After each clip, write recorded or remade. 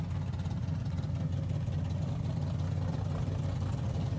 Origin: recorded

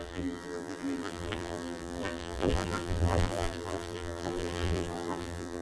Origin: remade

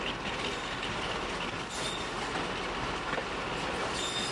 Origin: recorded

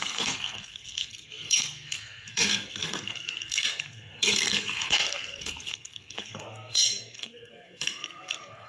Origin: remade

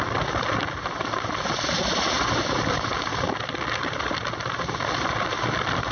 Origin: recorded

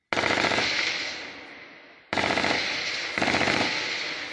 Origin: recorded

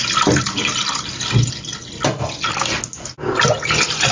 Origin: recorded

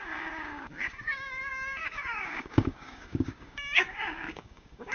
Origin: remade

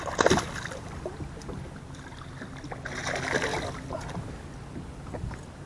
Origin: recorded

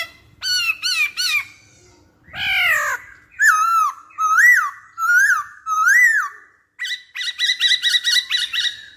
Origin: recorded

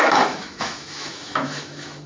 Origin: remade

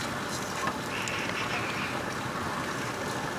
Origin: recorded